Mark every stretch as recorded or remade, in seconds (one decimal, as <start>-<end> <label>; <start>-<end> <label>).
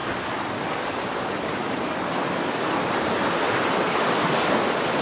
0.0-5.0 recorded